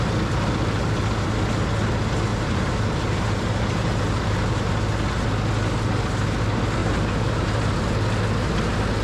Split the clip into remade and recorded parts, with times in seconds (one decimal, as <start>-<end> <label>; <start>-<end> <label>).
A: 0.0-2.3 recorded; 2.3-4.7 remade; 4.7-6.8 recorded; 6.8-7.7 remade; 7.7-9.0 recorded